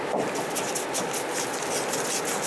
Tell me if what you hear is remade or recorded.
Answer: recorded